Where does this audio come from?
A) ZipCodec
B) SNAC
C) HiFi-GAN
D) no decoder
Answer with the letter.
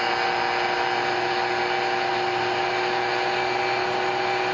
D